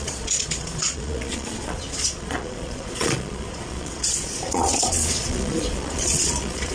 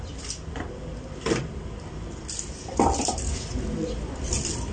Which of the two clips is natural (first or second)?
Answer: second